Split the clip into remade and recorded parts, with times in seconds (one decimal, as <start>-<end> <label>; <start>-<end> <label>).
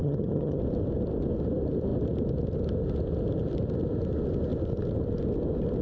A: 0.0-0.6 remade; 0.6-5.8 recorded